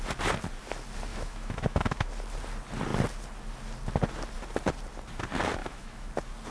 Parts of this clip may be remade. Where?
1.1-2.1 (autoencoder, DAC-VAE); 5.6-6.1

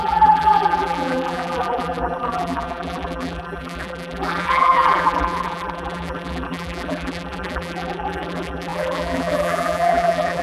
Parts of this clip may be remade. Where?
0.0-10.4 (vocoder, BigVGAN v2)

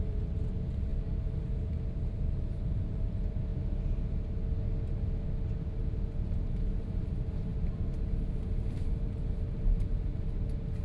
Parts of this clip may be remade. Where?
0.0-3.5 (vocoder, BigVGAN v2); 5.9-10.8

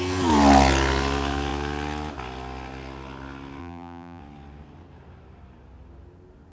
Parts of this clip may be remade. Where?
3.6-4.2 (vocoder, BigVGAN v2)

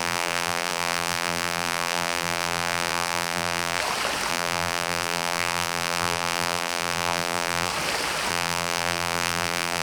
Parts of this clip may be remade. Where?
0.0-3.8 (vocoder, BigVGAN v2); 4.3-7.7; 8.3-9.8

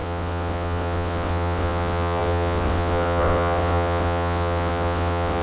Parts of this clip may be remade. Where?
0.0-5.4 (vocoder, WaveNeXt)

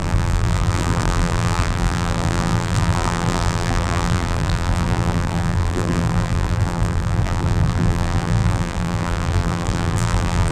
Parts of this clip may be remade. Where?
0.0-10.5 (vocoder, BigVGAN v2)

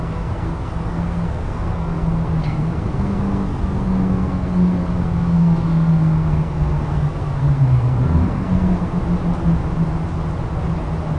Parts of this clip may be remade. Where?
0.0-9.0 (codec, SNAC)